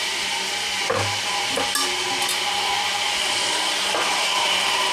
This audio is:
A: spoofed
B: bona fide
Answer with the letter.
B